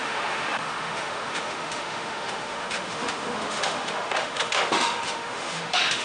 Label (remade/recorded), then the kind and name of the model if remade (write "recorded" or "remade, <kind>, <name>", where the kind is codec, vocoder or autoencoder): remade, autoencoder, DAC-VAE